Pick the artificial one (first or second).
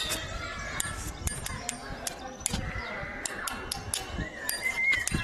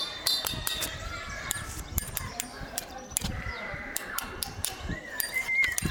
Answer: second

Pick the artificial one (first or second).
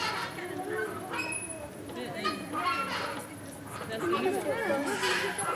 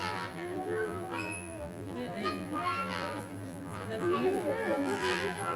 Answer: second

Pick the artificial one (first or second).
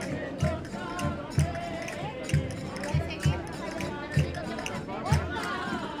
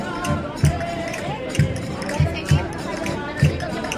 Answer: second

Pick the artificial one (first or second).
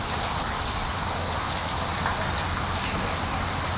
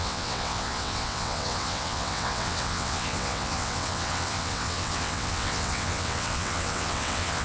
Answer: second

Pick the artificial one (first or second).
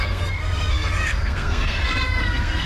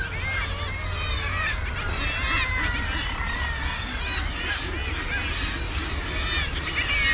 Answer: first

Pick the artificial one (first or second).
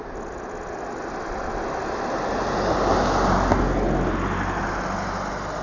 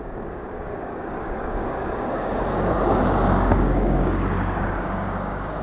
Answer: second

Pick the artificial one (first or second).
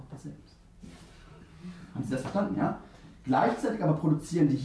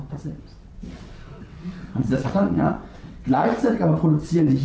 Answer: second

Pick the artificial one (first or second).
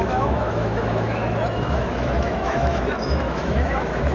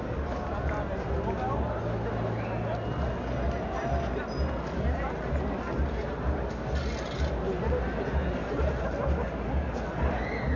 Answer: first